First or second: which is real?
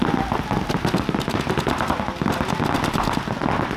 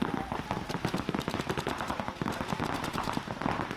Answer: first